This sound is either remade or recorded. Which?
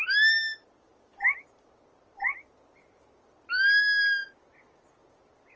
recorded